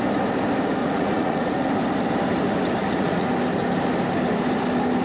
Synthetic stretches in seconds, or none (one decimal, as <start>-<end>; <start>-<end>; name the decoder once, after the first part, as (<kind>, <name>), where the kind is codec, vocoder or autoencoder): 0.8-1.7 (vocoder, Vocos); 2.8-3.3